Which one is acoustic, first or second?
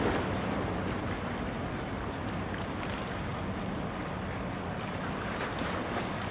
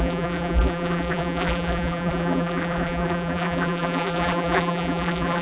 first